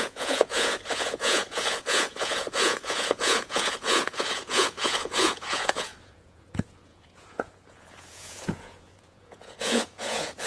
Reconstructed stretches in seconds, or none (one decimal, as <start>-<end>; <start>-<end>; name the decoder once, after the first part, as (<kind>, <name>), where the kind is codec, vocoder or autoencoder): 0.0-10.5 (vocoder, Vocos)